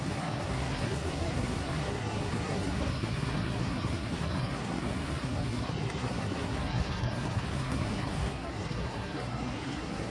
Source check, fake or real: fake